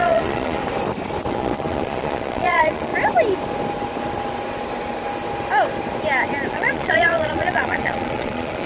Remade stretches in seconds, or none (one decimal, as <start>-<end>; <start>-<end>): 0.0-0.6; 1.3-2.9; 6.5-8.7